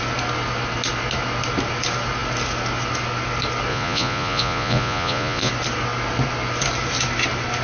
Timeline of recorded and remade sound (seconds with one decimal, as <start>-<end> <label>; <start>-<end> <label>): 0.0-3.7 recorded; 3.7-5.5 remade; 5.5-7.6 recorded